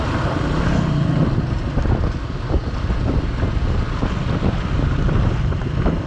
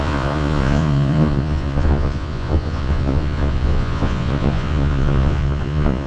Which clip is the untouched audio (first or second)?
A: first